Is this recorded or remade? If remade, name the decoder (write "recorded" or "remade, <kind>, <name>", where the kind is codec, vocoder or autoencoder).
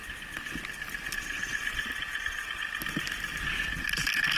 recorded